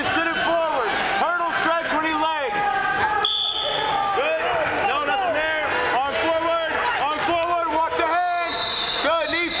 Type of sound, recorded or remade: recorded